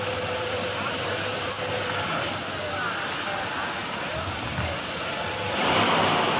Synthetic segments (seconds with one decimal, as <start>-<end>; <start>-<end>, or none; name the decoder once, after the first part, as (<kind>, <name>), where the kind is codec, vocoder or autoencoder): none